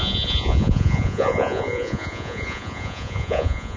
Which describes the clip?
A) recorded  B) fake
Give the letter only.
B